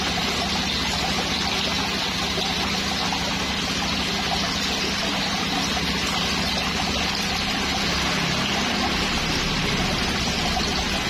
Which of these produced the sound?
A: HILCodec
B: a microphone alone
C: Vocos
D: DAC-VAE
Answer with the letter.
B